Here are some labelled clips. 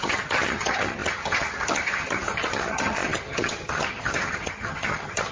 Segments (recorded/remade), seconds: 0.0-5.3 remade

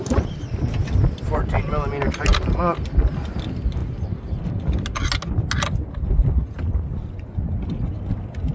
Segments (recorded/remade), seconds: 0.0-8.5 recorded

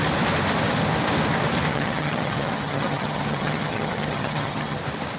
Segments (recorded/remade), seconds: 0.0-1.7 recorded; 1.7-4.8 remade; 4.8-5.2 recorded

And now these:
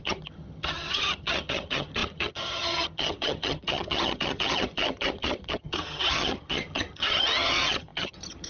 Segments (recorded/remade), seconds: 0.0-8.5 remade